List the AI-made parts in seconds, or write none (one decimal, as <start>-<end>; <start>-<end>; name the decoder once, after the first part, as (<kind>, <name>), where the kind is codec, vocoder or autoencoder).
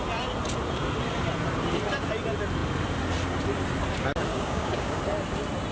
4.3-5.0 (codec, DAC)